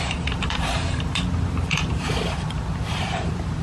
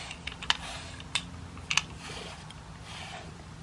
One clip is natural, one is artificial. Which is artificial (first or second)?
first